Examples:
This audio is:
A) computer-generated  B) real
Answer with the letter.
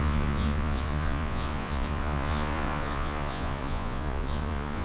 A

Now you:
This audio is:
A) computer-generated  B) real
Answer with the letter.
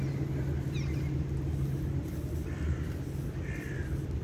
B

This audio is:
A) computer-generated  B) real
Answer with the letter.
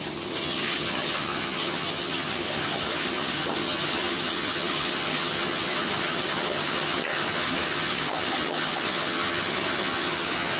A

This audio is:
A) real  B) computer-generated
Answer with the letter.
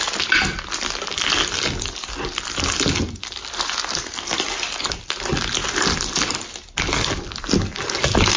A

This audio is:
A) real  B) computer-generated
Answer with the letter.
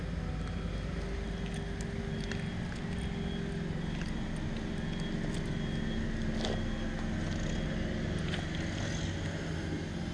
A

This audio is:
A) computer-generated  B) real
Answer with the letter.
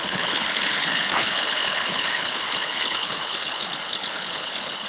A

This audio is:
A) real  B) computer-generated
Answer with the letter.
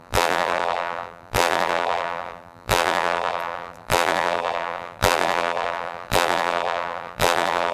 B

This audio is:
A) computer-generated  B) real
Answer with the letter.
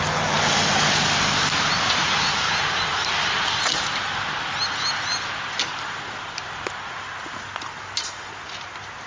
B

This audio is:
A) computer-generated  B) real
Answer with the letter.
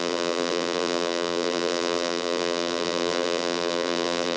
A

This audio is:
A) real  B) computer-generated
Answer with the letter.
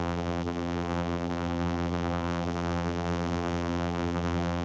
B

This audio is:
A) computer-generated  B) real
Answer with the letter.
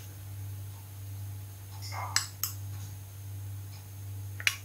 B